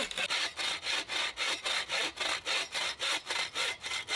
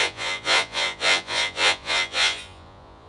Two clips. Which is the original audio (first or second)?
first